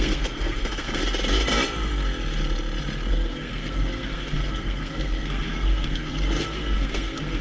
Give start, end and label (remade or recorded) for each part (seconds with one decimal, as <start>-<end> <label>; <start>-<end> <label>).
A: 0.0-1.0 remade; 1.0-3.1 recorded; 3.1-7.4 remade